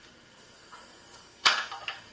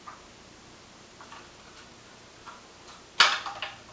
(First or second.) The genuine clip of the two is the second